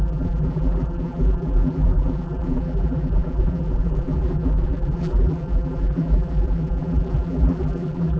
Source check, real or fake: fake